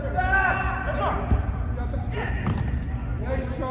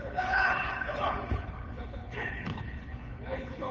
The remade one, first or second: second